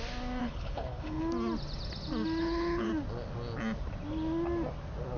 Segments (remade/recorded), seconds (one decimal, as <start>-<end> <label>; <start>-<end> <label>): 0.0-0.4 recorded; 0.4-1.2 remade; 1.2-2.4 recorded; 2.4-2.9 remade; 2.9-5.2 recorded